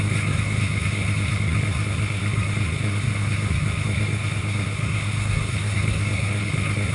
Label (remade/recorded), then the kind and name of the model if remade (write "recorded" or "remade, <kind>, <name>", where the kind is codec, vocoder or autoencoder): remade, codec, SNAC